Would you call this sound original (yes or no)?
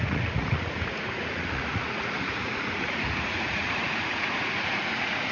no